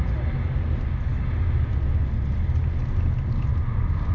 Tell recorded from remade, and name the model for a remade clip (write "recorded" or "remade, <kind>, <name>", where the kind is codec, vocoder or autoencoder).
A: recorded